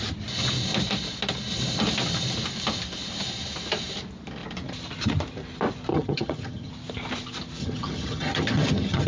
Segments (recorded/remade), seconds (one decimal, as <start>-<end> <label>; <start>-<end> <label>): 0.0-5.9 recorded; 5.9-6.7 remade; 6.7-7.6 recorded; 7.6-9.1 remade